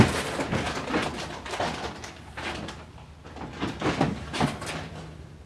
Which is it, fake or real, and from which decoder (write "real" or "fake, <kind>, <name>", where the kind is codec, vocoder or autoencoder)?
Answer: real